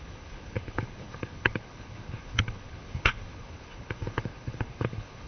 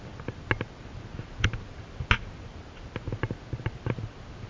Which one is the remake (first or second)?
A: first